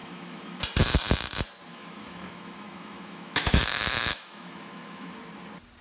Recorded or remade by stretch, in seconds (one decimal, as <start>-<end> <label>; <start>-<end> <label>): 0.0-0.6 remade; 0.6-1.7 recorded; 1.7-5.2 remade; 5.2-5.8 recorded